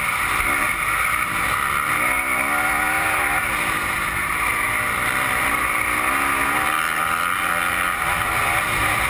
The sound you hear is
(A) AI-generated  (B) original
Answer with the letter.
B